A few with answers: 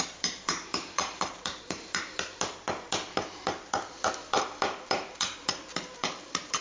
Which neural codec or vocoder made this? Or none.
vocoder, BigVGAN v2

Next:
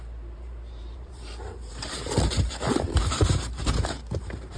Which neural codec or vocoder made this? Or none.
vocoder, BigVGAN v2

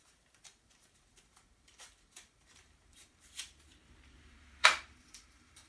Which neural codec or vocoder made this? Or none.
vocoder, BigVGAN v2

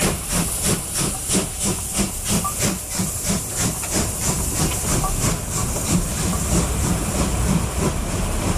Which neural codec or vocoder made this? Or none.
none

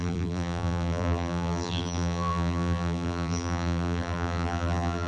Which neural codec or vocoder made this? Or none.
vocoder, BigVGAN v2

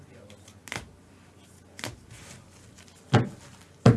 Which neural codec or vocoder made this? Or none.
none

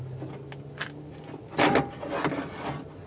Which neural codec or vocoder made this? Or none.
none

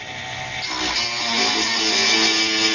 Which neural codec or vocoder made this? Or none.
none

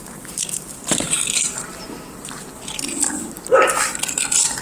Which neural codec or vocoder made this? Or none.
vocoder, BigVGAN v2